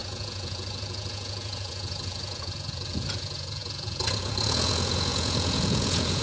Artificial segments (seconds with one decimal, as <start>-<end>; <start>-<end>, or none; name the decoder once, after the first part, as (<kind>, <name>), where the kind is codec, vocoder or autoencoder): 0.0-6.2 (vocoder, Vocos)